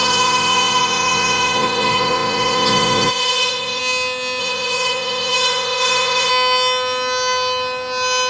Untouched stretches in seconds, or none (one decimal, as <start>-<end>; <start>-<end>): 3.8-4.4; 6.3-8.3